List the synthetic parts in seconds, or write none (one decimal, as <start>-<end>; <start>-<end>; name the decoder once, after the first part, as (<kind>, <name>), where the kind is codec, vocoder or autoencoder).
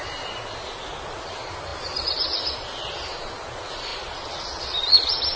none